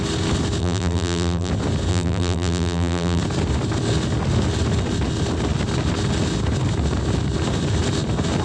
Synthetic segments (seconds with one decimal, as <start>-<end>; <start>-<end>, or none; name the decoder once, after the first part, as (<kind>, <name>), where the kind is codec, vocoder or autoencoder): 0.6-1.5 (vocoder, BigVGAN v2); 1.9-3.2

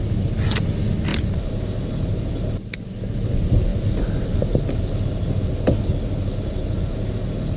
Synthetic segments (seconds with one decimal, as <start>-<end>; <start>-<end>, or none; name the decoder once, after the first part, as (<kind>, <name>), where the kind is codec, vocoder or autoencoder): 1.1-1.9 (vocoder, BigVGAN v2)